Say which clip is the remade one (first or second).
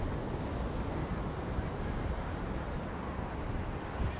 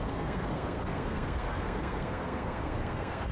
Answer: second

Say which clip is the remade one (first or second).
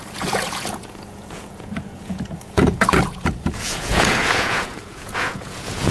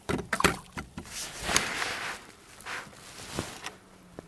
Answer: first